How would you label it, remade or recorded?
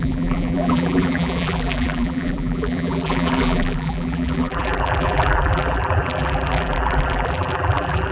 remade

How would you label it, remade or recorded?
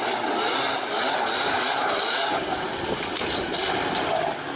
recorded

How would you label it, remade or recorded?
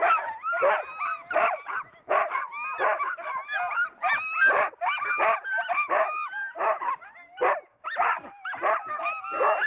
recorded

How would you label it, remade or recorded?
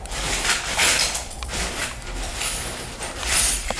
remade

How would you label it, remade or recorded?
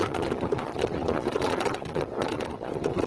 remade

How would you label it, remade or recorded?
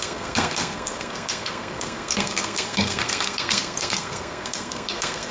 remade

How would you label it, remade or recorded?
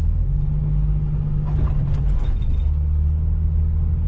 recorded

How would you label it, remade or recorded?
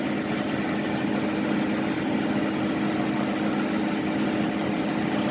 recorded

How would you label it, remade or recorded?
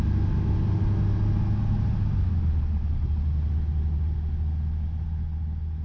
recorded